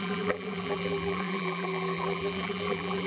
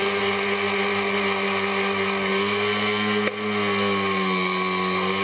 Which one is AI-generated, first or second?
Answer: first